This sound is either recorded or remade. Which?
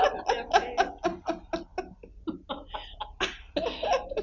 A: recorded